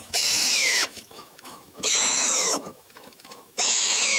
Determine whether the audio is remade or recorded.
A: remade